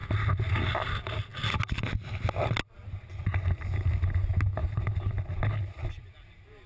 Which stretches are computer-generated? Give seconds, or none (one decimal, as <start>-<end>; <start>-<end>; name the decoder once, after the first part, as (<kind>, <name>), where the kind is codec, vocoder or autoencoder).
none